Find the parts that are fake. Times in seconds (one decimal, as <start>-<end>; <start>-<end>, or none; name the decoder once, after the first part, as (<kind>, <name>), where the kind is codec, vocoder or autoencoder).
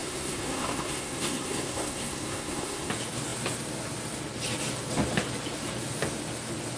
0.0-2.9 (codec, SNAC)